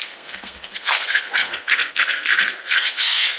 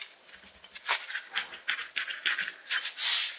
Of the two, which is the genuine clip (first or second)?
second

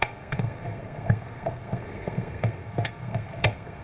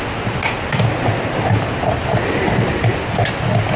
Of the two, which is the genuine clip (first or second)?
second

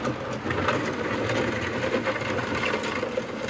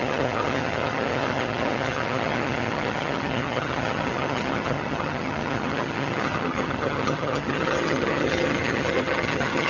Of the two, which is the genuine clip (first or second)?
first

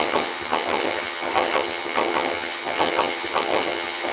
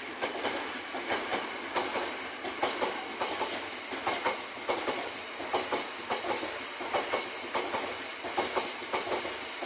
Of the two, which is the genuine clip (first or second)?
second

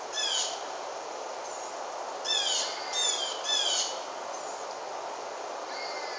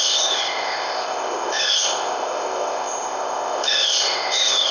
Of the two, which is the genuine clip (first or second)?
first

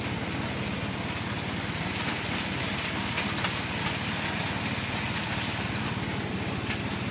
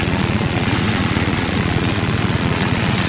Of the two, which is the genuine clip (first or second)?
first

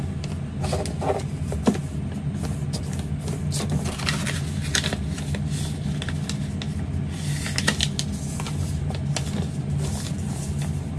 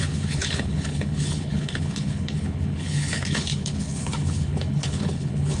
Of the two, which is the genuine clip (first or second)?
first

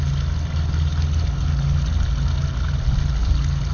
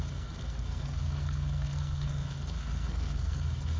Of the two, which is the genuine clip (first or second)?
first